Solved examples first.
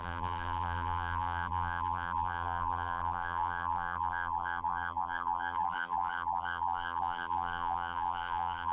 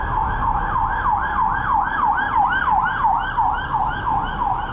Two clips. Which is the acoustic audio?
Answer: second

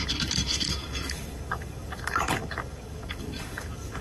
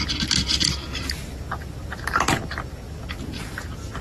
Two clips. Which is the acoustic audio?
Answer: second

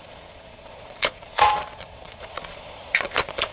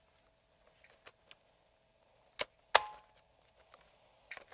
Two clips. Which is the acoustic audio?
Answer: second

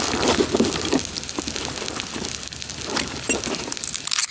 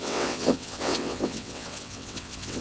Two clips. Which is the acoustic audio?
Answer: first